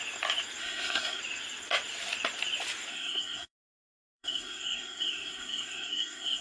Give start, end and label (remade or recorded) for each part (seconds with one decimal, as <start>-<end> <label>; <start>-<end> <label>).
0.0-0.6 recorded; 0.6-1.2 remade; 1.2-2.9 recorded; 2.9-6.4 remade